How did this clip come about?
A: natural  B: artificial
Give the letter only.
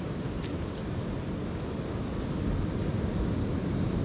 A